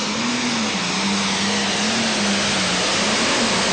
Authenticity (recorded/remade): recorded